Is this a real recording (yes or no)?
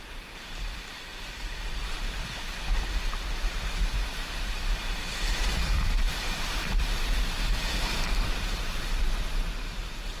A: no